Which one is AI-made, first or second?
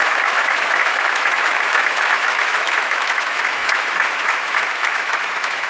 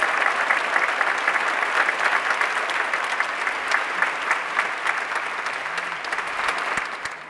first